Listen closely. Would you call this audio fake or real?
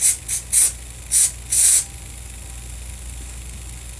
real